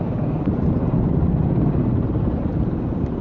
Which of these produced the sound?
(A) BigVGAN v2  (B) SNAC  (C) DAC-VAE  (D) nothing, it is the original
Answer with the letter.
D